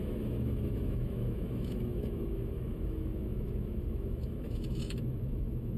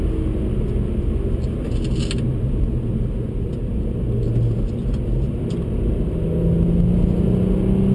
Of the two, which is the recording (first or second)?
second